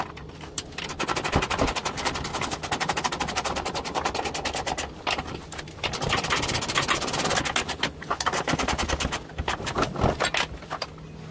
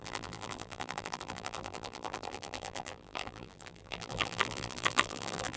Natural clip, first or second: first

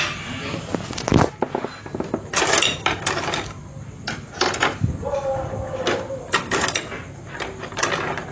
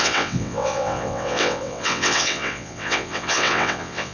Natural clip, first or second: first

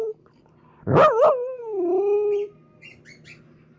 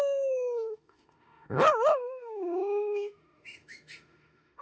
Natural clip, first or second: first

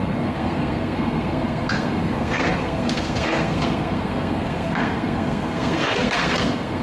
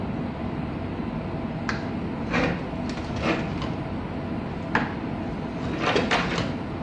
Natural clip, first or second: second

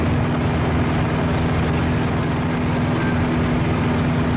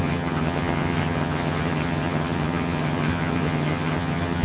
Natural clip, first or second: first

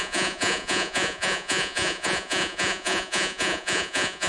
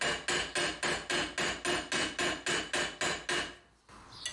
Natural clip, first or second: second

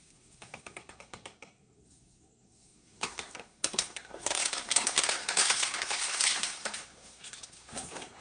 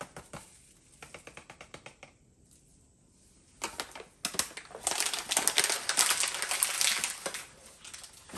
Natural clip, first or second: second